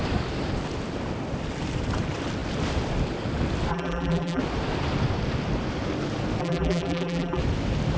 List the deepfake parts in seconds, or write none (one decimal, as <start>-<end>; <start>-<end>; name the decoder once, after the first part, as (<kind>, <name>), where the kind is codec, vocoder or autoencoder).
3.7-4.4 (vocoder, BigVGAN v2); 6.4-7.4